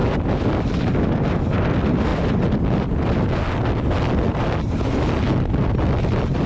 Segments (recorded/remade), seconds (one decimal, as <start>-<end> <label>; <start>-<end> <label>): 0.0-6.5 recorded